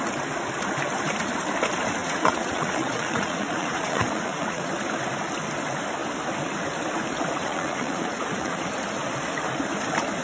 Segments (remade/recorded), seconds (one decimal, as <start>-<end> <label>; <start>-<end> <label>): 0.0-2.0 recorded; 2.0-4.7 remade; 4.7-7.4 recorded; 7.4-8.6 remade; 8.6-10.2 recorded